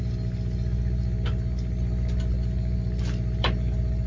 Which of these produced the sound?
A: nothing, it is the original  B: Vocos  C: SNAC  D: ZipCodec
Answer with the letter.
A